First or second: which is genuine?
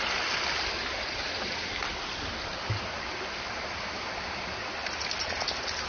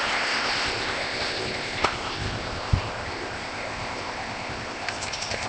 first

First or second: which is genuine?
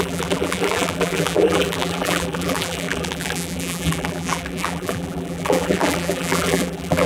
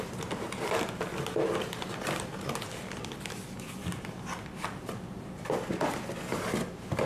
second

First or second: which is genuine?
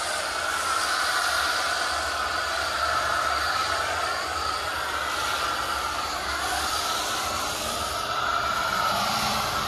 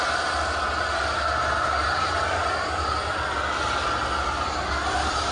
second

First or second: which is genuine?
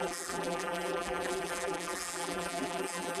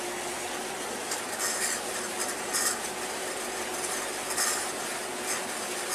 second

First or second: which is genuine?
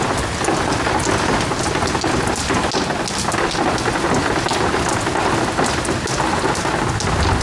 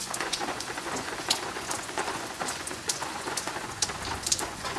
first